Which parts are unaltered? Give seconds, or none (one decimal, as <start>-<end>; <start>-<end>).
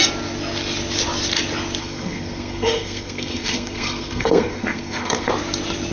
0.0-1.8; 5.3-5.9